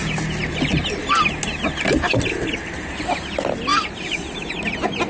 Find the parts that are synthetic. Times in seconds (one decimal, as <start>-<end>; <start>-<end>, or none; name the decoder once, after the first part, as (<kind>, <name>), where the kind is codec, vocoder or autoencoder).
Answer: 3.7-4.5 (vocoder, BigVGAN v2)